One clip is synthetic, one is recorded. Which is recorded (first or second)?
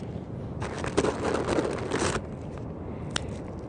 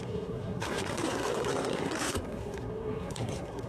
first